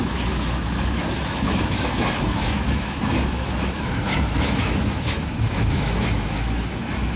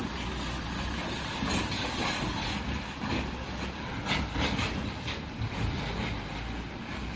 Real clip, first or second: second